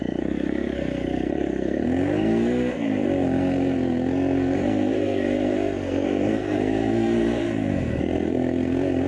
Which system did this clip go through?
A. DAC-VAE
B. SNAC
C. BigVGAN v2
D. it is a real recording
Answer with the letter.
B